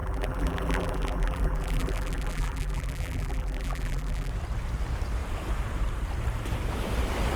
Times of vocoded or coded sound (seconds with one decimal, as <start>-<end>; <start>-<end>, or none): 0.0-4.3